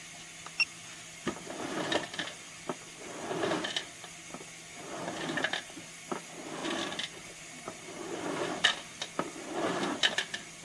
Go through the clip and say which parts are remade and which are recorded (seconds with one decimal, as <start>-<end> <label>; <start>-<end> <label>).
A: 0.0-10.6 recorded